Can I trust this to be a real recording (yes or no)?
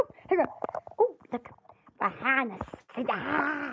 yes